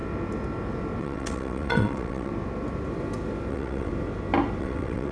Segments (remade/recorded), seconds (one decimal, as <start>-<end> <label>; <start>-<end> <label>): 0.0-1.0 recorded; 1.0-2.3 remade; 2.3-3.5 recorded; 3.5-3.9 remade; 3.9-4.6 recorded; 4.6-5.1 remade